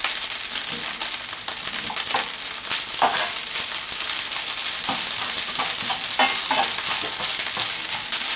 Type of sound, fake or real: real